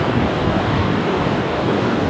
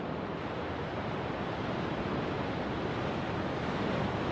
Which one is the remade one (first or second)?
first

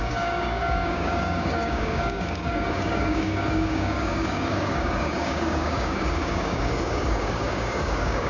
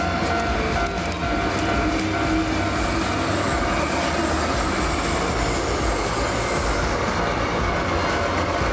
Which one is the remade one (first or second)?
first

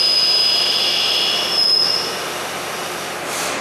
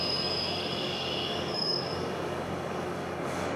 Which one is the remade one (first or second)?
second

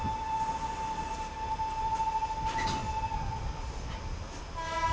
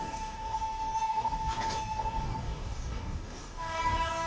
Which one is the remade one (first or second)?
second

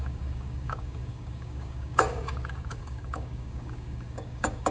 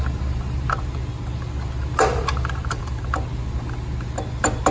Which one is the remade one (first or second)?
first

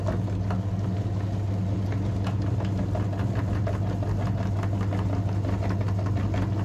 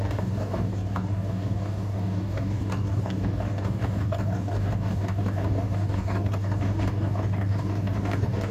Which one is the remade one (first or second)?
second